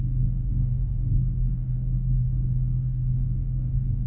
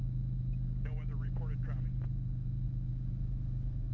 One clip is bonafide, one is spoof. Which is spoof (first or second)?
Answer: first